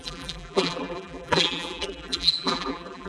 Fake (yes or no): yes